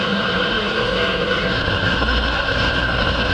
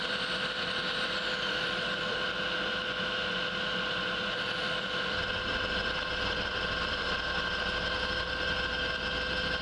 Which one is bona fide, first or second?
second